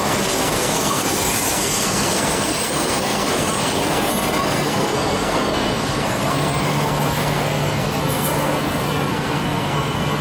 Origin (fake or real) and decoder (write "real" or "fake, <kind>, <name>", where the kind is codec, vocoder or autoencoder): fake, codec, SNAC